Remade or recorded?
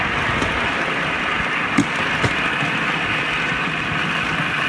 recorded